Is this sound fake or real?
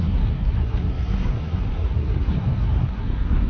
fake